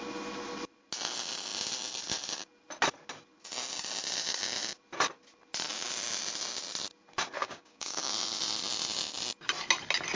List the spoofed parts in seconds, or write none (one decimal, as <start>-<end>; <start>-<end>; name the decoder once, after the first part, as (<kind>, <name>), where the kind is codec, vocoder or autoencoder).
7.4-8.1 (codec, DAC)